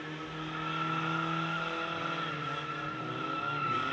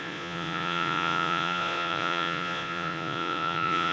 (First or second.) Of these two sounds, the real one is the first